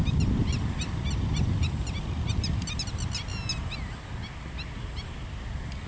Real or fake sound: real